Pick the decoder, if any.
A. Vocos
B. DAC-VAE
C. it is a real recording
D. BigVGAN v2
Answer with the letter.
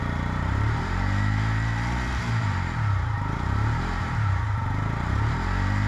D